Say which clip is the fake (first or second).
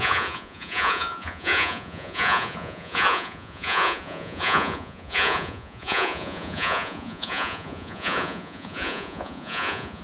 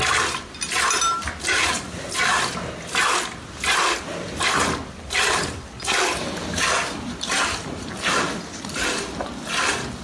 first